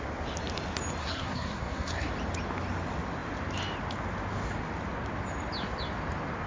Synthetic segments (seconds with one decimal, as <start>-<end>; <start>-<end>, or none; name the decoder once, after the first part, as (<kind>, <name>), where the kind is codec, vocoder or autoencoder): 1.0-2.1 (codec, SNAC)